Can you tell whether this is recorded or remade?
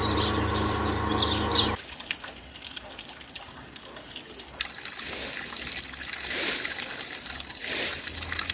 recorded